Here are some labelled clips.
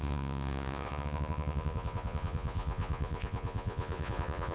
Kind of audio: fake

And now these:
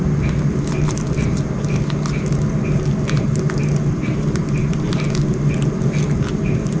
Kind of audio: real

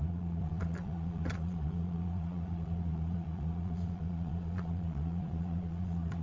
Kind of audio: fake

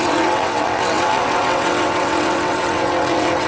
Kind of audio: fake